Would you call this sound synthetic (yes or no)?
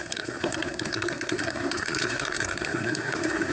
yes